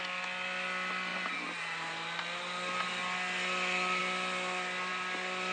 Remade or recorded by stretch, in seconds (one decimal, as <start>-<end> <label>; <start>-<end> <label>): 0.0-5.5 recorded